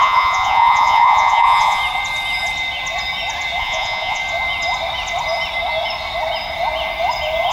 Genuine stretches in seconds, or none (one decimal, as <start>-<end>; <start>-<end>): 1.8-3.6; 4.2-7.5